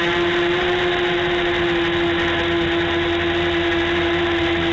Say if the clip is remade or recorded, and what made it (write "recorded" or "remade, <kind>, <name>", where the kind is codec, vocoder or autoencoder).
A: recorded